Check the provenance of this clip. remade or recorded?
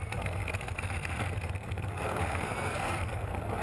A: remade